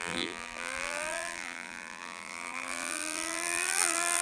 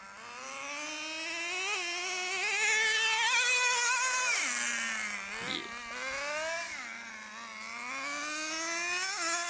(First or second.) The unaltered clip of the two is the second